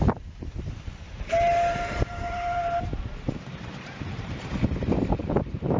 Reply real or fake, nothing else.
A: fake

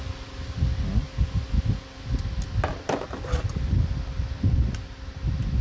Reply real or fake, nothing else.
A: real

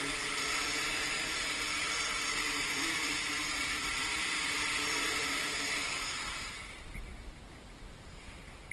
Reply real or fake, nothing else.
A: fake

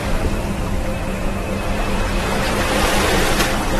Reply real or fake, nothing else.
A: fake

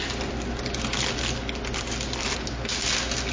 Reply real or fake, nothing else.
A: real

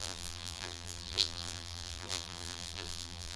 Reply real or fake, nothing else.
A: fake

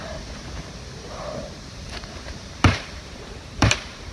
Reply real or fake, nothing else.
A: fake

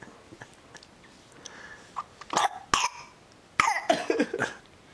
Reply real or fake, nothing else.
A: real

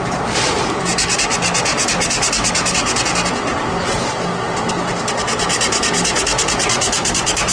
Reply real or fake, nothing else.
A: real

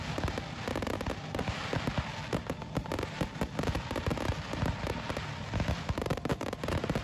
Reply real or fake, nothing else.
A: real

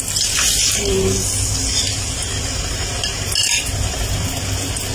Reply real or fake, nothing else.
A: real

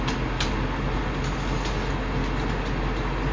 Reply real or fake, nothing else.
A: real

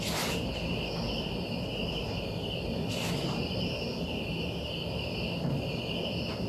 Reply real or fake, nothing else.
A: real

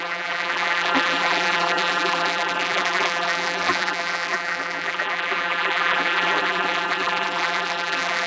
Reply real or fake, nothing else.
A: fake